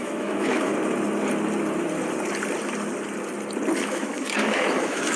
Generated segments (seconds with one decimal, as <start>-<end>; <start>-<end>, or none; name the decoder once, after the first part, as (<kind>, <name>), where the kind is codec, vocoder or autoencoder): 0.0-0.7 (autoencoder, DAC-VAE); 3.8-5.2